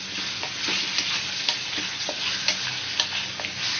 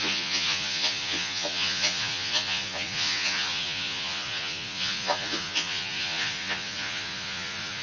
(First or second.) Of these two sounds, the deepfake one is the second